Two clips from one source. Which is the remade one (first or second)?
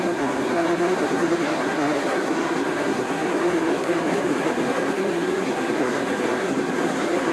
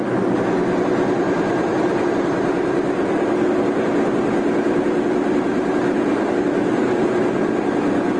first